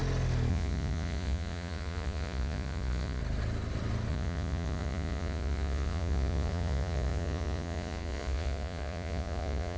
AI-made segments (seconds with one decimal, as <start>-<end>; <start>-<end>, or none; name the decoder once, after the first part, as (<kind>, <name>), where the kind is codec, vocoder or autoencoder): 0.5-3.2 (vocoder, Vocos); 4.1-9.8